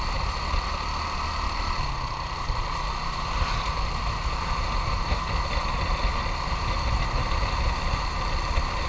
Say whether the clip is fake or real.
real